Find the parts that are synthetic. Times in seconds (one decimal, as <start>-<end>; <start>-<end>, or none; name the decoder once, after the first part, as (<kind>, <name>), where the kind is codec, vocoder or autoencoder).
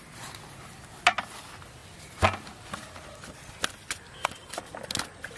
none